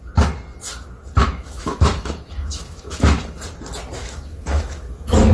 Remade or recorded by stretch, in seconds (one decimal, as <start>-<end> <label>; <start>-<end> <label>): 0.0-1.2 recorded; 1.2-3.2 remade; 3.2-4.0 recorded; 4.0-5.3 remade